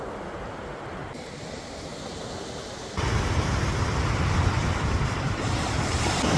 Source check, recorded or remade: remade